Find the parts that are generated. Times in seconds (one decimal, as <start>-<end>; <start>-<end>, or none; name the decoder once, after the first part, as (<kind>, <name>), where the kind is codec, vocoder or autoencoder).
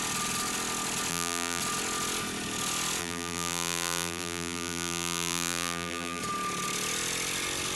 1.1-1.6 (vocoder, BigVGAN v2); 3.0-6.2